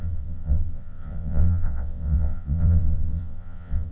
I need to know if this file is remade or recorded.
remade